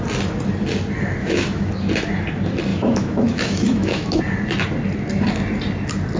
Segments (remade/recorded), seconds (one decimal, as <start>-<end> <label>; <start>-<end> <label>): 0.0-1.2 recorded; 1.2-1.7 remade; 1.7-2.7 recorded; 2.7-4.2 remade; 4.2-6.2 recorded